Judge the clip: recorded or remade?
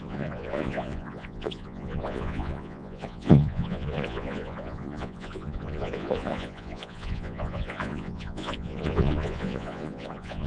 remade